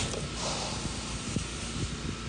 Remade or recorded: recorded